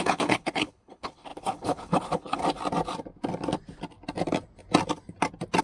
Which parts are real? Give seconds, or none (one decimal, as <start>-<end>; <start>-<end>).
2.4-5.6